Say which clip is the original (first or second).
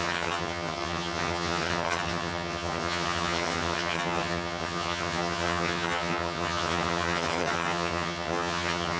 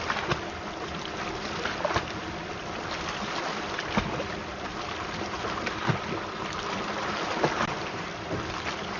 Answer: second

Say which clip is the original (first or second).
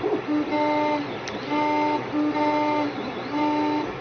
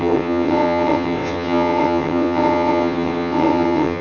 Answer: first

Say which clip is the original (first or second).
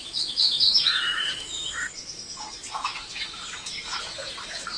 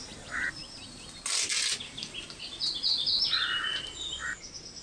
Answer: second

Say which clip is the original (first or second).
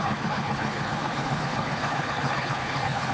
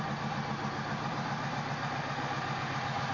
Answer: second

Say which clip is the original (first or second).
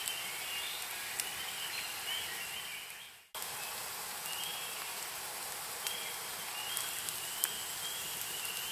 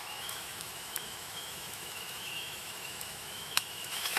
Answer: first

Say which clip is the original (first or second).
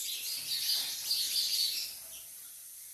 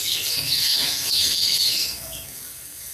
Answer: first